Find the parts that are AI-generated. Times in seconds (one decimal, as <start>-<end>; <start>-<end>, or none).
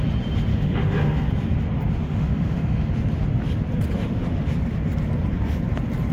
0.5-1.3; 2.0-2.9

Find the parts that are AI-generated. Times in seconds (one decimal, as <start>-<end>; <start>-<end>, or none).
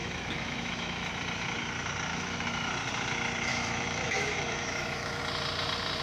0.0-1.1; 2.1-2.7; 3.5-5.2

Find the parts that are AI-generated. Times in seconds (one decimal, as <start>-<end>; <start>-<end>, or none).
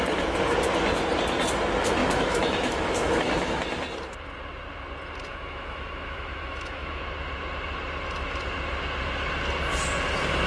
2.0-3.6; 5.3-7.0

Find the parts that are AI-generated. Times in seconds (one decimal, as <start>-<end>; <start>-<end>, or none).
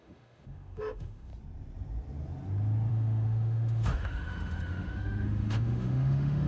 0.0-1.3; 2.9-6.5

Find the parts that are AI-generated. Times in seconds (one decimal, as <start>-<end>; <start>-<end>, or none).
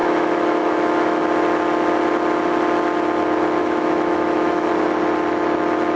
0.0-1.2; 3.6-4.7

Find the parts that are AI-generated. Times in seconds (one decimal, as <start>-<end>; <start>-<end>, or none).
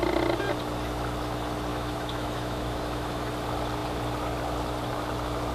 1.7-3.3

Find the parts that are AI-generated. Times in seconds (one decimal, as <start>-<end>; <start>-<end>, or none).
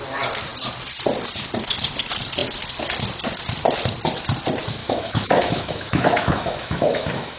4.8-7.4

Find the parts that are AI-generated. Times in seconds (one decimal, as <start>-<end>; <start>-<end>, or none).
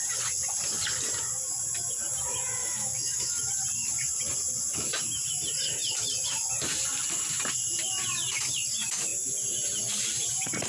2.6-3.5